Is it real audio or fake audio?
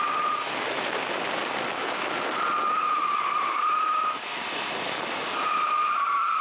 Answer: real